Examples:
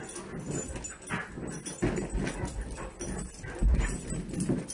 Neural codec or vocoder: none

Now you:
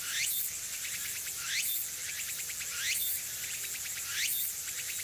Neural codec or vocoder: none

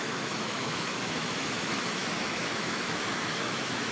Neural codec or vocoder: autoencoder, DAC-VAE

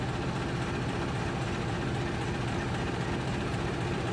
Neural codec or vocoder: none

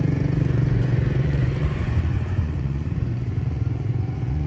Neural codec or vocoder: vocoder, Vocos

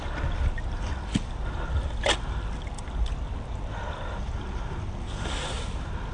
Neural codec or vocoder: none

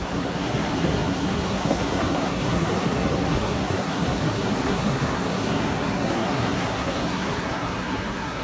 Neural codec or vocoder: codec, SNAC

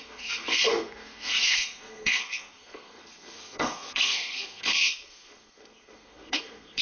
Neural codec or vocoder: codec, SNAC